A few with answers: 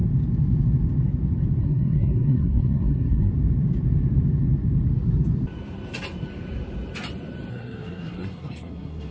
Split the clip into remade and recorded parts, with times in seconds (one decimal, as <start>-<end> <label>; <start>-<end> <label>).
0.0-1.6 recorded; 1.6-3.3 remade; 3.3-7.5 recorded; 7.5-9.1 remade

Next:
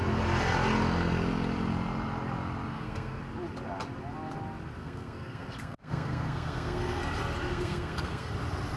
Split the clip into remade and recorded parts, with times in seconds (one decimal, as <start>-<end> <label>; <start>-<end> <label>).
0.0-2.7 recorded; 2.7-3.2 remade; 3.2-4.8 recorded; 4.8-7.0 remade; 7.0-7.5 recorded; 7.5-8.3 remade; 8.3-8.8 recorded

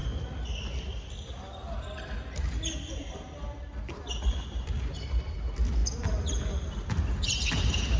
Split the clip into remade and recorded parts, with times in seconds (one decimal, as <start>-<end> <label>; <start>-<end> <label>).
0.0-8.0 recorded